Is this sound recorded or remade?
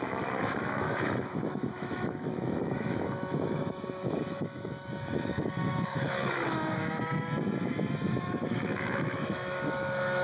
remade